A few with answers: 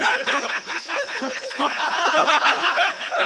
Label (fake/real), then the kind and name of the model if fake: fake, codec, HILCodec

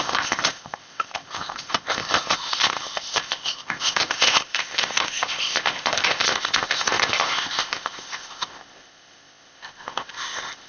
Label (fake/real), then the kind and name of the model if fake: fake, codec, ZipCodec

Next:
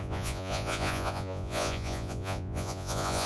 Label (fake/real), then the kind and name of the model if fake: fake, vocoder, Vocos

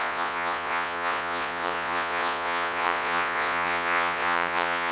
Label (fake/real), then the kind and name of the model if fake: fake, vocoder, Vocos